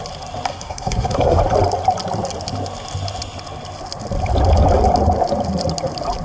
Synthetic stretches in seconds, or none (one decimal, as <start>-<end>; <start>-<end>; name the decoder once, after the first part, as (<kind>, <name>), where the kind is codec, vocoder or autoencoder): 0.5-1.4 (codec, SNAC)